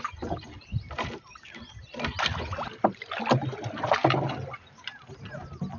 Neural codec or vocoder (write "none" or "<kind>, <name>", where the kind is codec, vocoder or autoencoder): none